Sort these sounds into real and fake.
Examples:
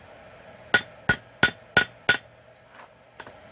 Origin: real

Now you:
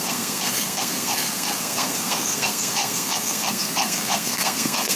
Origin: fake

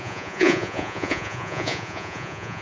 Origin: fake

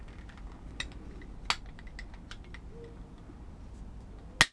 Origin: real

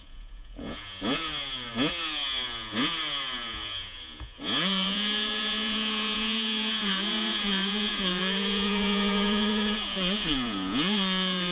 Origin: fake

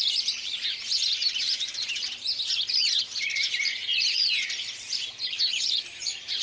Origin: fake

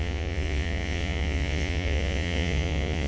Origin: fake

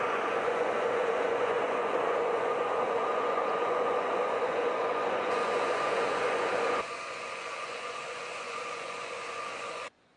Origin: fake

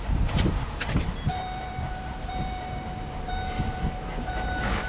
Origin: fake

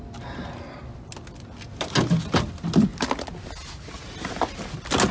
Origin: real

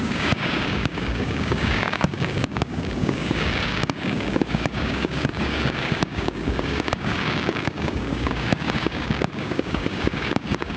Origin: fake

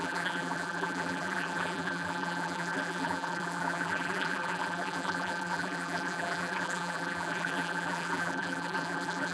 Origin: fake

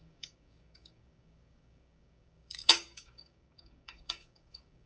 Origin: fake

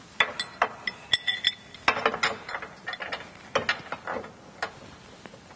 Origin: real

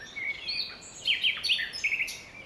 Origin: real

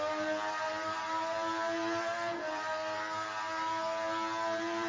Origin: fake